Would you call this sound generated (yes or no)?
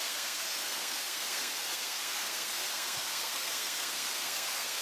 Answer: yes